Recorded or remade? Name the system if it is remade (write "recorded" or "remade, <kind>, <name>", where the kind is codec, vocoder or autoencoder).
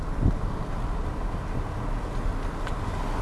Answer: recorded